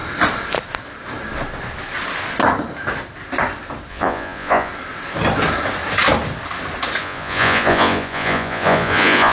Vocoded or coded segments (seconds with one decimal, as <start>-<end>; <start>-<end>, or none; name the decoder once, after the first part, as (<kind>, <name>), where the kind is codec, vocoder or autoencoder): 3.9-4.7 (vocoder, Vocos); 7.0-9.3